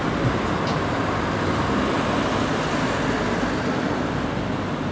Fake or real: real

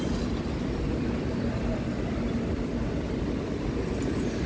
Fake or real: real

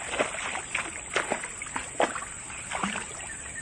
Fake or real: real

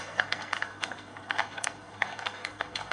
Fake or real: fake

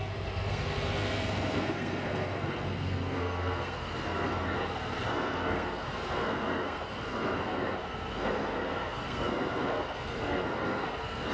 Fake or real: fake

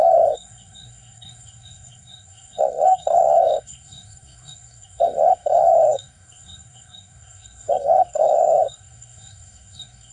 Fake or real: fake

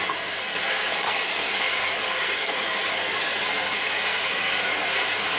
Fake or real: fake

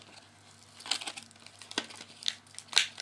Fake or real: real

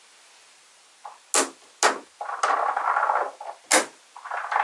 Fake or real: real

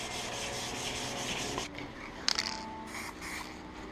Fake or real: real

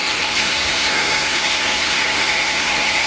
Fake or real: fake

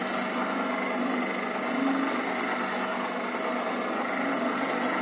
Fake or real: real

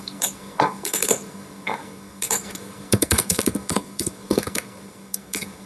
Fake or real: fake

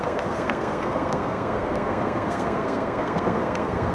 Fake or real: fake